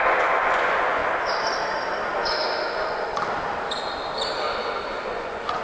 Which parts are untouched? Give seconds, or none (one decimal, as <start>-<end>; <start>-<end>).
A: 1.0-2.7; 3.1-5.0